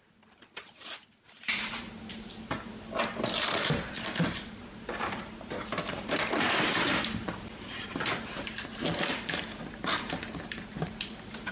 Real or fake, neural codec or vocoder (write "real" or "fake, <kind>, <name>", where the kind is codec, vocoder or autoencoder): fake, vocoder, BigVGAN v2